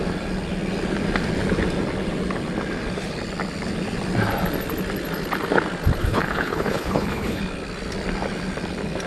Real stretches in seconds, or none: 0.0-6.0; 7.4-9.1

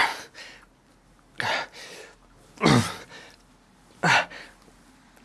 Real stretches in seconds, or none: 0.0-5.2